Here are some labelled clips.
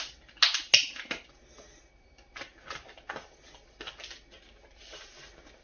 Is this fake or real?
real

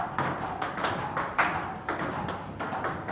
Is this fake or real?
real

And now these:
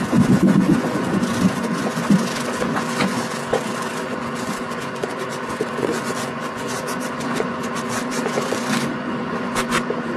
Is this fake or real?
fake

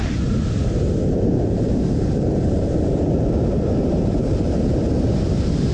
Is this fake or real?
fake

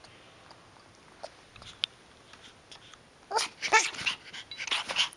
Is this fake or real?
real